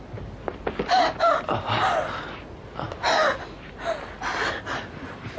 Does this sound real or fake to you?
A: real